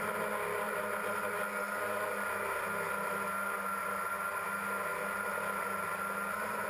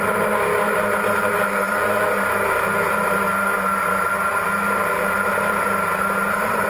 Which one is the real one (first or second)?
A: first